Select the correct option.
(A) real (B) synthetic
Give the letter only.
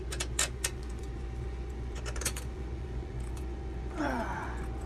B